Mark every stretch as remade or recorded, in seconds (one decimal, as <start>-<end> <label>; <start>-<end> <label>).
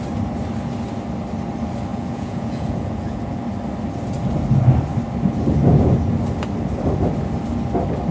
0.0-1.9 recorded; 1.9-3.4 remade; 3.4-8.1 recorded